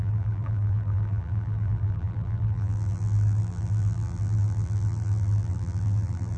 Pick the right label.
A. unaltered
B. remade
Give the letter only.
B